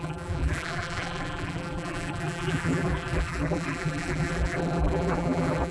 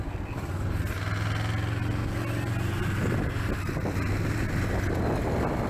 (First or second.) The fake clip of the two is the first